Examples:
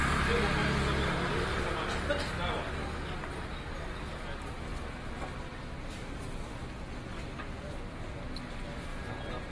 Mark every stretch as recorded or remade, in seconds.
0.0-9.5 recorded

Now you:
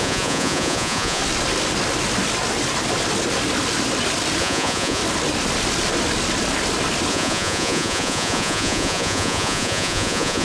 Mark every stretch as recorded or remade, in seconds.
0.0-1.2 remade; 1.2-4.4 recorded; 4.4-5.0 remade; 5.0-7.1 recorded; 7.1-10.4 remade

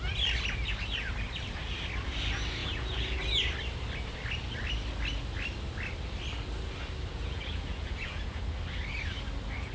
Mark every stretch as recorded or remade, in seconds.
0.0-2.6 recorded; 2.6-3.2 remade; 3.2-7.1 recorded; 7.1-8.4 remade; 8.4-9.7 recorded

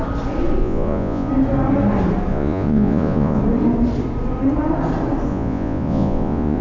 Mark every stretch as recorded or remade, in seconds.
0.0-0.6 recorded; 0.6-1.3 remade; 1.3-2.3 recorded; 2.3-3.4 remade; 3.4-5.3 recorded; 5.3-6.6 remade

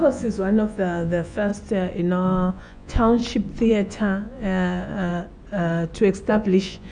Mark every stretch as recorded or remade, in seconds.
0.0-1.5 remade; 1.5-2.5 recorded; 2.5-3.2 remade; 3.2-3.7 recorded; 3.7-5.1 remade; 5.1-6.3 recorded; 6.3-6.9 remade